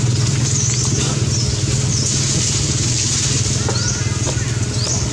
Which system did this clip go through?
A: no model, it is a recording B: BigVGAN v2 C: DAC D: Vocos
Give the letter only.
A